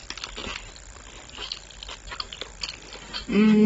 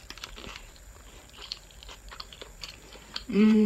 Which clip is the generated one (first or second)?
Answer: second